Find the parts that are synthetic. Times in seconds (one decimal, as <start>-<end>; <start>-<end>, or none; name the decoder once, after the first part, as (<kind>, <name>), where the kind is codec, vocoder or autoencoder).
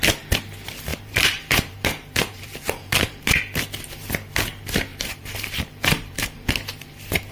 0.9-3.4 (vocoder, BigVGAN v2); 4.9-6.5